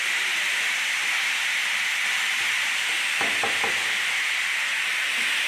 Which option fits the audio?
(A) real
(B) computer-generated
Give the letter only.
A